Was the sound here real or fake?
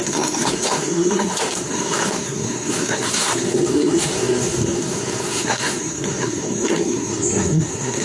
fake